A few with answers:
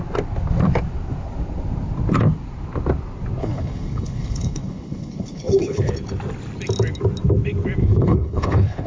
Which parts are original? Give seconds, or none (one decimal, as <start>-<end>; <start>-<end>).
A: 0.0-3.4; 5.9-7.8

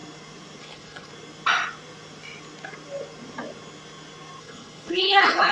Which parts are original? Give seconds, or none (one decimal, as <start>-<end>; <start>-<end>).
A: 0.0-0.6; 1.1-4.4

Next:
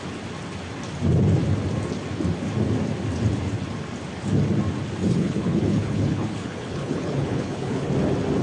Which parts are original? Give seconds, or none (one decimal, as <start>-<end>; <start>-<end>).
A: 0.0-5.0; 7.9-8.4

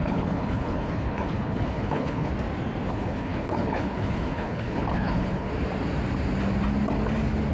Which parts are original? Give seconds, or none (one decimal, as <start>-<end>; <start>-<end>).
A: 2.3-2.9; 5.5-7.5

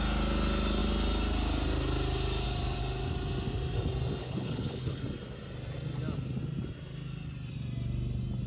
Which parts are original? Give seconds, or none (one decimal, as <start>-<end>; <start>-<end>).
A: 0.0-4.2; 5.0-8.5

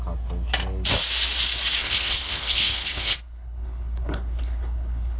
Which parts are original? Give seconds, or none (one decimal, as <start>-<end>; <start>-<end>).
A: 0.0-1.8